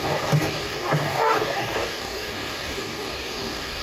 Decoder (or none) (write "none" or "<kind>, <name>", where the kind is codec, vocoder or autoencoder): codec, DAC